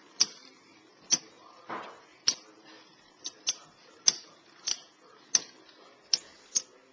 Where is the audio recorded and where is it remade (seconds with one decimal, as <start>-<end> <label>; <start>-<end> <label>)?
0.0-6.9 recorded